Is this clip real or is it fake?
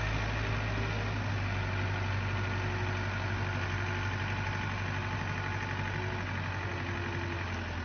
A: real